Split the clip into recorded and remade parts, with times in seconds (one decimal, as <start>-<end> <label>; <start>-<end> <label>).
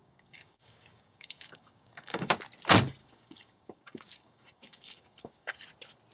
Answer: 0.0-2.3 remade; 2.3-3.0 recorded; 3.0-5.6 remade; 5.6-6.1 recorded